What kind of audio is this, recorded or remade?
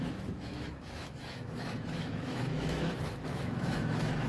remade